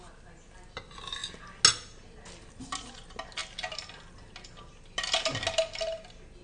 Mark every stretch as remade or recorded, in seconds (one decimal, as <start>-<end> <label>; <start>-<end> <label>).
0.0-6.4 recorded